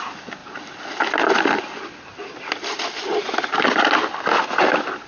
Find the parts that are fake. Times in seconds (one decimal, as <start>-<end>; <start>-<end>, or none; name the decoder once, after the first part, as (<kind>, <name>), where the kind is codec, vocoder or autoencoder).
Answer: none